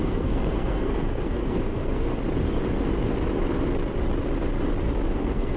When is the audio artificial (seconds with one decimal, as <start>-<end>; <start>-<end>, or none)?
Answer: 0.0-2.1; 5.1-5.6